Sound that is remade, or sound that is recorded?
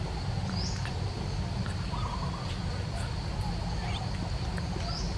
recorded